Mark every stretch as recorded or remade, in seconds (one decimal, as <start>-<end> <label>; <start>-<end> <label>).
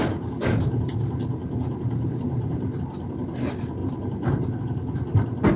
0.0-0.9 remade; 0.9-1.4 recorded; 1.4-3.1 remade; 3.1-3.8 recorded; 3.8-4.6 remade; 4.6-5.6 recorded